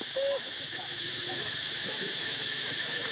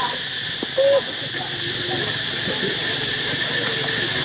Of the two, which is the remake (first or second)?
first